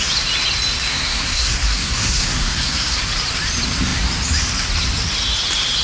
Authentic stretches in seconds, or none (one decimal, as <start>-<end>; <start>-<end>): 0.0-0.9; 3.0-5.8